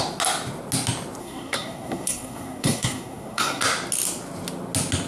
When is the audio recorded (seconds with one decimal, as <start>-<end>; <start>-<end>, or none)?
0.0-1.2; 3.6-5.1